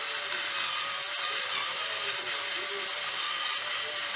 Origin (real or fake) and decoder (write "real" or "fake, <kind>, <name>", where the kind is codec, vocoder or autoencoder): real